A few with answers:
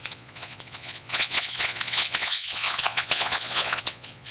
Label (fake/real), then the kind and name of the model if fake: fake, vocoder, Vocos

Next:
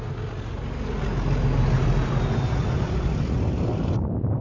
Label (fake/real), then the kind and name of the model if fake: real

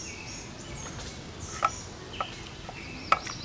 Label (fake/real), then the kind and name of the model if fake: real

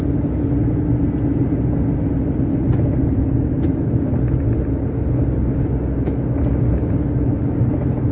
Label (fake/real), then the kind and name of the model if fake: real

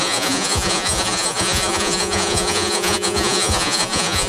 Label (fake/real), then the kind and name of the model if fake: fake, vocoder, Vocos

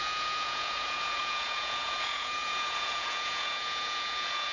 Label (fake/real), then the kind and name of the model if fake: fake, vocoder, Vocos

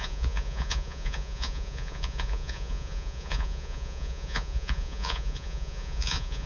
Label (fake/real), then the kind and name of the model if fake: fake, vocoder, Vocos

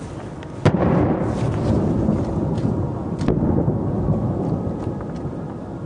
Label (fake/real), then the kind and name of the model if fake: real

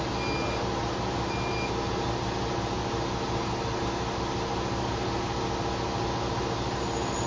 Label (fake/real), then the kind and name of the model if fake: real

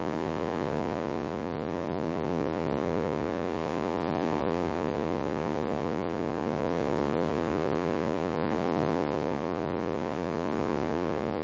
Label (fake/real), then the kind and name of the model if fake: fake, vocoder, Vocos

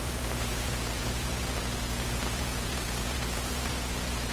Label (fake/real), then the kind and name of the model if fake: fake, vocoder, Vocos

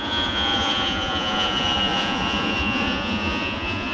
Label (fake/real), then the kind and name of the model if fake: fake, vocoder, Vocos